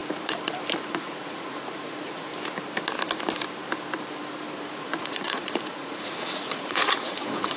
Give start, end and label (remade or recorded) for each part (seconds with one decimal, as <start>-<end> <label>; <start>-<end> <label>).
0.0-0.9 recorded; 0.9-2.3 remade; 2.3-4.6 recorded; 4.6-7.6 remade